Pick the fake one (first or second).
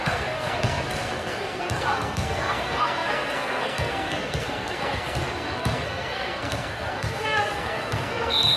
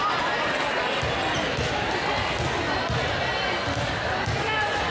first